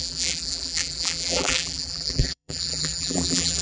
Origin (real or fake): fake